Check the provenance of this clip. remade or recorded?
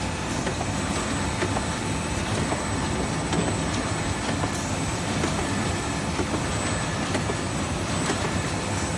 recorded